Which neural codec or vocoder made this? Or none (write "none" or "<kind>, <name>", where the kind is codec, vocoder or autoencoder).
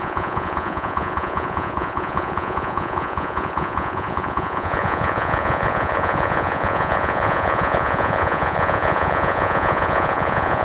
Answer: vocoder, Vocos